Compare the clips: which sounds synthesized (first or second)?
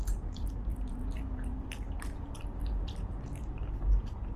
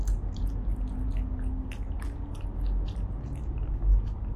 first